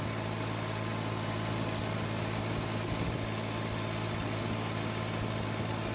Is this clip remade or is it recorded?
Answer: recorded